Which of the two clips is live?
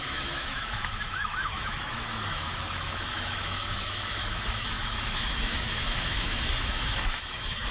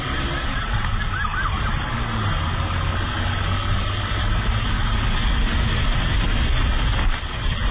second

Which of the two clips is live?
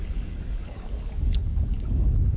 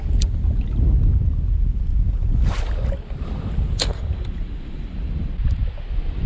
second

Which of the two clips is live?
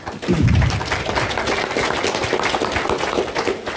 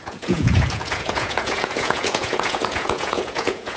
first